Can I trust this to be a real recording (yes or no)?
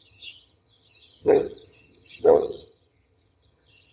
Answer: no